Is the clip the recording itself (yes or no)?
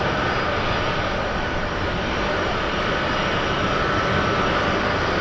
yes